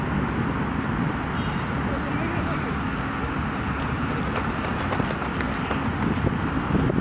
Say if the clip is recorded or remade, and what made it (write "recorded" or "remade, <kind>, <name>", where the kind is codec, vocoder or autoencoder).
recorded